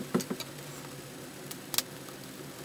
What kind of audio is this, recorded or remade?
recorded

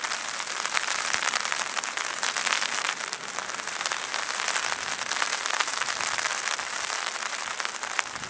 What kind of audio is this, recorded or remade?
remade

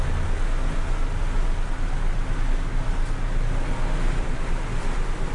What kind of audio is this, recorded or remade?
recorded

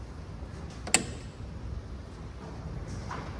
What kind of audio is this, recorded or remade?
recorded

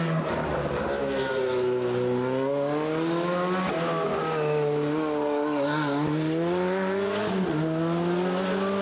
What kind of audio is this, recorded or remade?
recorded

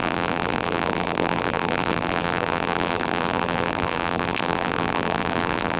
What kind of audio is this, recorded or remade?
remade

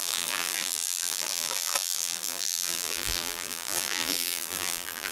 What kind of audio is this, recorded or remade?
remade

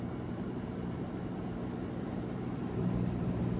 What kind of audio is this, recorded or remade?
remade